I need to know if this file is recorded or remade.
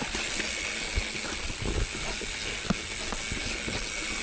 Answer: recorded